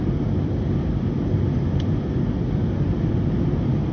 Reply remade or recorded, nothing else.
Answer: recorded